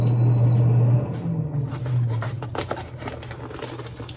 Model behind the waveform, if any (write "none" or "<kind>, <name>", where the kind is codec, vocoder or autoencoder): none